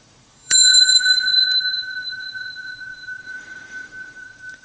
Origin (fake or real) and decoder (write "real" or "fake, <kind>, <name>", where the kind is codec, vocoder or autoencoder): fake, vocoder, Vocos